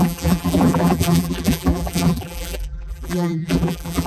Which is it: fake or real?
fake